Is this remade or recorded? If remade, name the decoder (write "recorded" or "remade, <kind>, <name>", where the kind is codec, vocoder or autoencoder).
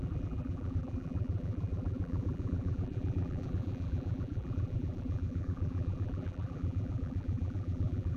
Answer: remade, vocoder, BigVGAN v2